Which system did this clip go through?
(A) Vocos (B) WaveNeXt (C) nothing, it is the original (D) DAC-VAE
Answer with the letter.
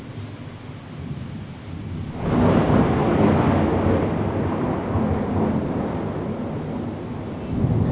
C